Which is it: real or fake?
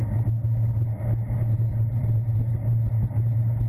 real